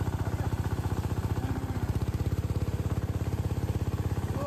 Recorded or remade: remade